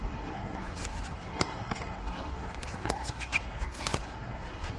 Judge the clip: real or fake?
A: fake